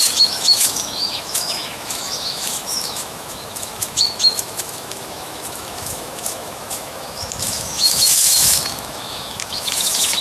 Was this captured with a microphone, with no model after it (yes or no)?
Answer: no